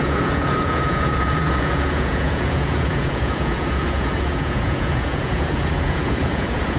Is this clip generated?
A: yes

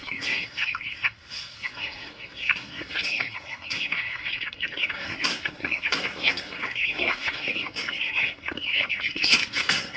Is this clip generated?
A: yes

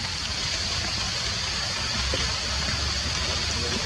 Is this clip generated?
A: no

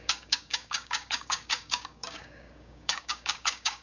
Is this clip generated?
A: yes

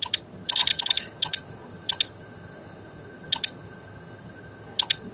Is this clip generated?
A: yes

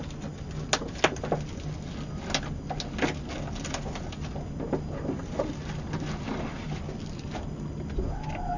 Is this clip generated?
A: no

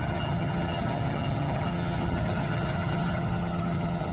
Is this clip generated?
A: yes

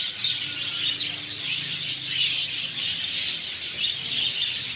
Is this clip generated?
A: no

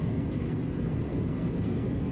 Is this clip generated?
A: yes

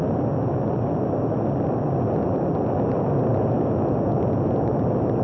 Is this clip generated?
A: no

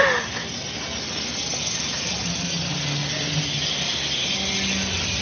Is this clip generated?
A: no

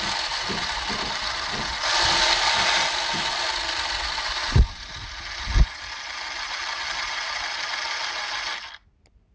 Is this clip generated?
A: no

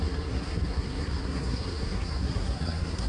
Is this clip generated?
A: yes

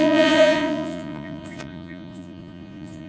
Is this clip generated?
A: yes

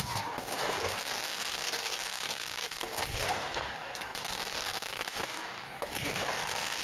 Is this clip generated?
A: yes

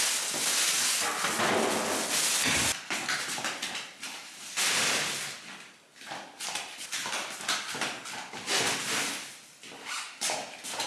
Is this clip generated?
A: no